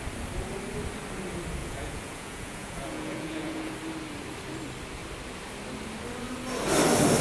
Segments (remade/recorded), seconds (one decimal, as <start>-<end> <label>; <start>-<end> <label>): 0.0-1.6 recorded; 1.6-3.7 remade; 3.7-7.2 recorded